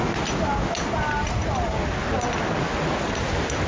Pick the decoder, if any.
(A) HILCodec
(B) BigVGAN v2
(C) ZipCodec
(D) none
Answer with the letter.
D